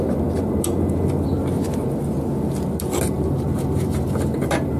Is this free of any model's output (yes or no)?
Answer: yes